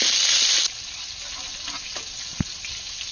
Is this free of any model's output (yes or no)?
yes